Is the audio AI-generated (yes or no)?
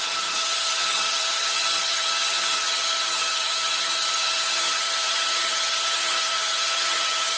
yes